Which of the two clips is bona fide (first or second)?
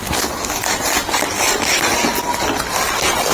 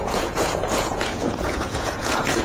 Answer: first